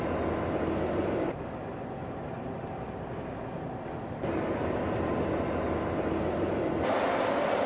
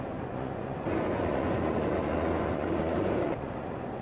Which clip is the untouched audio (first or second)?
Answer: first